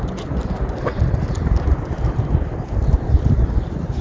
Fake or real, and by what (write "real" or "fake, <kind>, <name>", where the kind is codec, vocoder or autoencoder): real